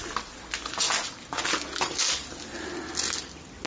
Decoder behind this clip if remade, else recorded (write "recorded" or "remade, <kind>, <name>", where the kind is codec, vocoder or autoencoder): recorded